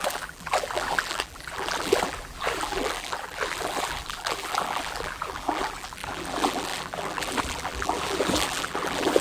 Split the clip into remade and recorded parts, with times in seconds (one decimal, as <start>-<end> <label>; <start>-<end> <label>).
0.0-9.2 remade